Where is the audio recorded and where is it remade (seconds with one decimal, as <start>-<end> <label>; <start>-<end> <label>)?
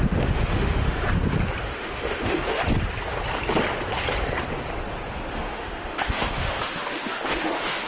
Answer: 0.0-1.0 remade; 1.0-1.6 recorded; 1.6-2.6 remade; 2.6-5.3 recorded; 5.3-7.9 remade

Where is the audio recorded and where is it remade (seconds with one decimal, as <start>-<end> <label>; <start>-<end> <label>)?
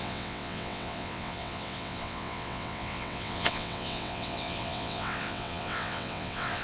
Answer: 0.0-6.6 remade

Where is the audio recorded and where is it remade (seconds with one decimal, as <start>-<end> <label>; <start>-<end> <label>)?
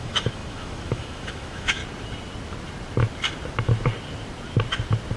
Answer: 0.0-1.8 remade; 1.8-5.2 recorded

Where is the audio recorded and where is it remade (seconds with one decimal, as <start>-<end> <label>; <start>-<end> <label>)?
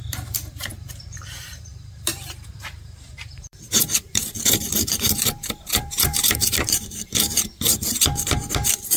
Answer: 0.0-9.0 remade